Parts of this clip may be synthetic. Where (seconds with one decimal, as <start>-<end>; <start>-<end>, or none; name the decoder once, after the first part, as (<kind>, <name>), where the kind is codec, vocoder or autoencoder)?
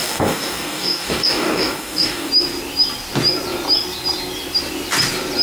0.0-2.3 (codec, DAC)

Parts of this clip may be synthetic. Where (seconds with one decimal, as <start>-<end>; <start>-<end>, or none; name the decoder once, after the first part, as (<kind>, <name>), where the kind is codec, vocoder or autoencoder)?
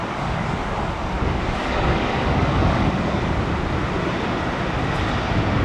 0.0-3.4 (codec, DAC)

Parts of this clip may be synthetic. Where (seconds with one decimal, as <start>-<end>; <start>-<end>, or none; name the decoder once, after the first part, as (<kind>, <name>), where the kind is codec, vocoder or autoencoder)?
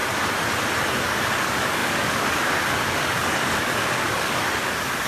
0.9-5.1 (codec, DAC)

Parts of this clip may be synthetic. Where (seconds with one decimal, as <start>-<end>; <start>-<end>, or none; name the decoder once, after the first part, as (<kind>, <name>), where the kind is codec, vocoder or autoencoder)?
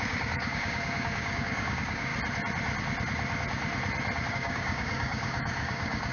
0.0-2.1 (codec, DAC); 4.3-6.1